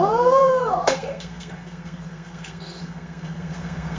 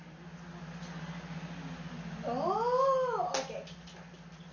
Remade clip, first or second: first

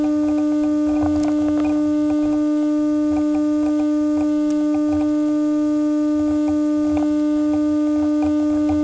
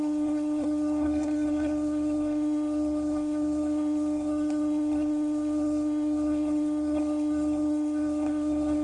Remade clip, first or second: second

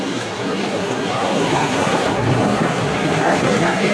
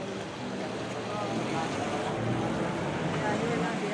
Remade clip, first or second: first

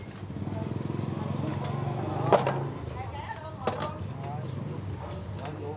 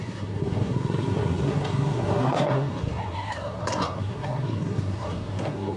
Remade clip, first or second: second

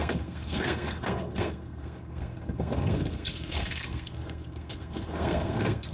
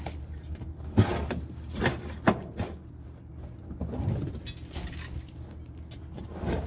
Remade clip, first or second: first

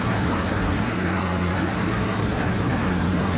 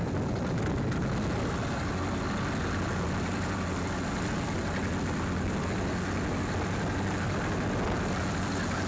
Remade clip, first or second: first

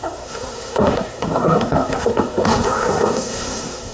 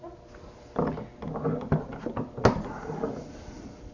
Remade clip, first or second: first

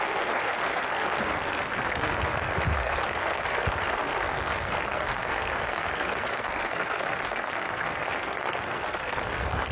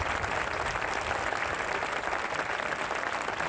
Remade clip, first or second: first